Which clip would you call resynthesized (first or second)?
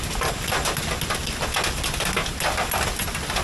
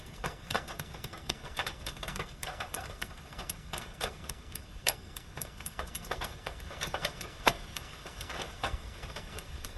second